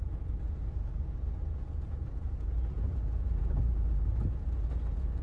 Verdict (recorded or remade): remade